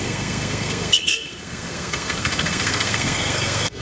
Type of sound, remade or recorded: remade